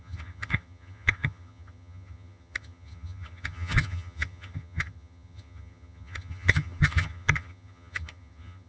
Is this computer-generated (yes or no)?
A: yes